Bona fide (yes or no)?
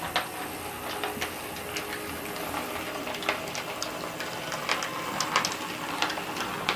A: yes